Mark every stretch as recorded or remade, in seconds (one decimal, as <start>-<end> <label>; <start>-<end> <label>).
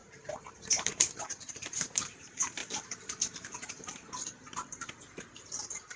0.0-2.6 remade; 2.6-3.7 recorded; 3.7-6.0 remade